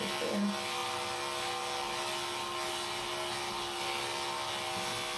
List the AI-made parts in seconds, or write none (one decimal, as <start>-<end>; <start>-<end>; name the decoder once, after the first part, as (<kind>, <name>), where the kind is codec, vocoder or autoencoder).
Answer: none